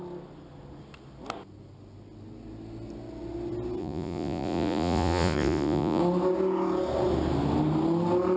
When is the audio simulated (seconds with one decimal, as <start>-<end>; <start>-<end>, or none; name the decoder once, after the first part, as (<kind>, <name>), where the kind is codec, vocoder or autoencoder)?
3.8-6.0 (vocoder, Vocos)